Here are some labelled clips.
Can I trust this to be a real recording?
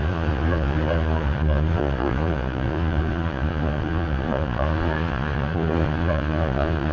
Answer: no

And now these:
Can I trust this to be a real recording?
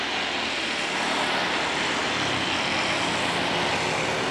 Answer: yes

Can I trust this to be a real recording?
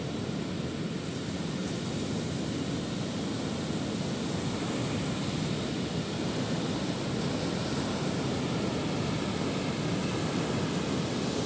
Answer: yes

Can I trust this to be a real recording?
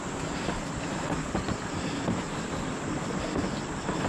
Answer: yes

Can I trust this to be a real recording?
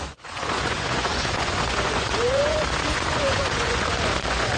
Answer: no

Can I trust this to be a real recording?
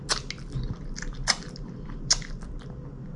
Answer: yes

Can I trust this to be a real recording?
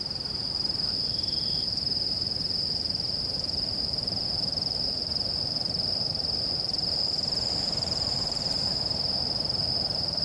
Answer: no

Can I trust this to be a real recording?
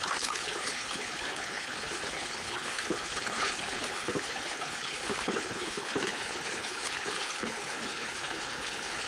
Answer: no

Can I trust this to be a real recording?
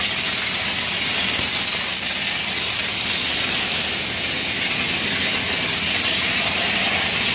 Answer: yes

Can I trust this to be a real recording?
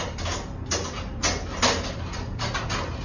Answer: yes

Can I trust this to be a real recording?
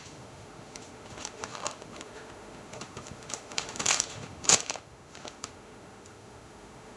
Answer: no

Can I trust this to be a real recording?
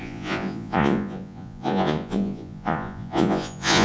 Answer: no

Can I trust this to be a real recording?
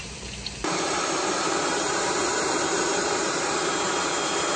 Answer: no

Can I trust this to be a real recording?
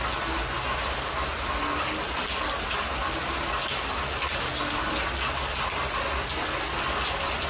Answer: yes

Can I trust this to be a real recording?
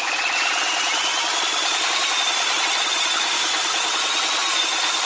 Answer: no